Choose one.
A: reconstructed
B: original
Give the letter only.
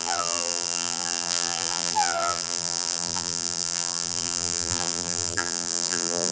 A